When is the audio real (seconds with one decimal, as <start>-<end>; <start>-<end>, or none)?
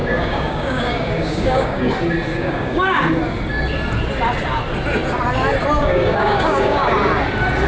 1.9-2.3; 3.0-5.8; 6.9-7.7